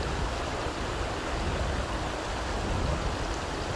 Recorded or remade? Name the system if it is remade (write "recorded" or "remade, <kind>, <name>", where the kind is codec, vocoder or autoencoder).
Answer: recorded